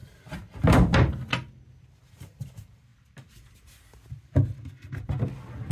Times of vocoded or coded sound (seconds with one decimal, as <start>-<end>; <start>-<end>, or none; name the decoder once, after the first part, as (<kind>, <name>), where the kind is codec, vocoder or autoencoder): 2.1-2.9 (vocoder, BigVGAN v2)